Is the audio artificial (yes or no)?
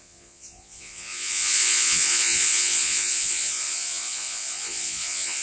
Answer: yes